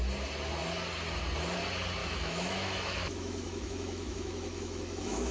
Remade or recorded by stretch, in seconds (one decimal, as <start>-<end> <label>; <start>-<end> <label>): 0.0-2.0 recorded; 2.0-5.3 remade